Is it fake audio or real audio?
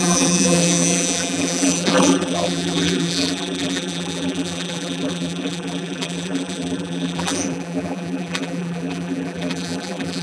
fake